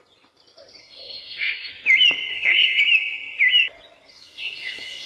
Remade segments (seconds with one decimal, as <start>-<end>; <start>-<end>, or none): 0.8-1.7; 2.3-2.8; 4.1-5.1